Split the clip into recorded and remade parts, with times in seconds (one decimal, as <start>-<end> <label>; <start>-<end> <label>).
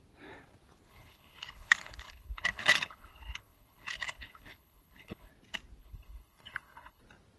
0.0-0.9 recorded; 0.9-5.3 remade; 5.3-5.8 recorded; 5.8-7.0 remade; 7.0-7.4 recorded